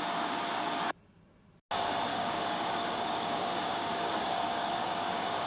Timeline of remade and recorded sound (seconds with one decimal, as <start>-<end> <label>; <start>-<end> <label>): 0.0-2.1 recorded; 2.1-5.5 remade